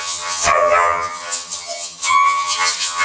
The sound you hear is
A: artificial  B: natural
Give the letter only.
A